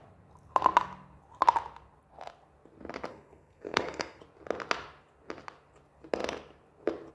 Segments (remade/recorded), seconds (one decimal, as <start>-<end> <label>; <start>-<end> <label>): 0.0-3.1 recorded; 3.1-4.2 remade; 4.2-7.1 recorded